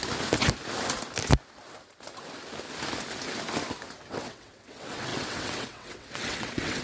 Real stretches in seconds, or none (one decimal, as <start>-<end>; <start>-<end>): 0.0-4.1